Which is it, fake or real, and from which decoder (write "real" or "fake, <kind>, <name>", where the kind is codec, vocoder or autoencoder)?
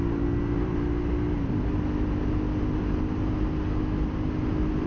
real